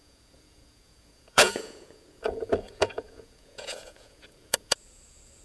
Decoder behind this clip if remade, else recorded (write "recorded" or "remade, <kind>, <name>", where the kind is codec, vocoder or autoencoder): remade, vocoder, Vocos